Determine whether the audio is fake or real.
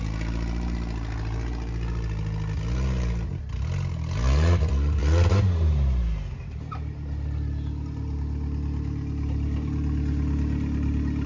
real